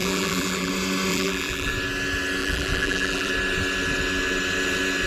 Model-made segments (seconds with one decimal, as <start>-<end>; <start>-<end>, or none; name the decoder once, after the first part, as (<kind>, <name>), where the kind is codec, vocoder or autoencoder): 0.0-0.7 (vocoder, BigVGAN v2); 1.1-1.7; 2.4-3.3